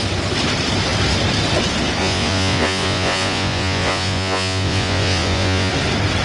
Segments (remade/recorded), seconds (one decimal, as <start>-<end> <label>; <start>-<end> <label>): 0.0-2.0 recorded; 2.0-5.7 remade; 5.7-6.2 recorded